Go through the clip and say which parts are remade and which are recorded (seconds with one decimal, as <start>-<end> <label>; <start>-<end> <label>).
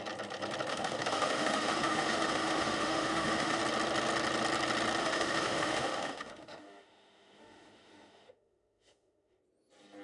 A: 0.0-0.7 recorded; 0.7-3.6 remade; 3.6-5.0 recorded; 5.0-9.4 remade; 9.4-10.0 recorded